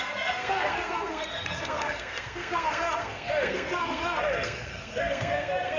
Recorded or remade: remade